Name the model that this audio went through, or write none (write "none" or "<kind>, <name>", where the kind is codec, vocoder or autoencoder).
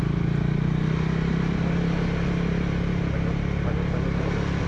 none